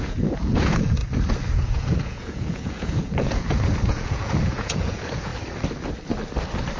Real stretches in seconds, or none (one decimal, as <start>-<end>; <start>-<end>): 1.0-1.5; 5.3-6.8